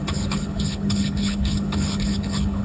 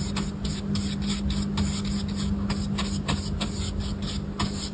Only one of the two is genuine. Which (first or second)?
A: second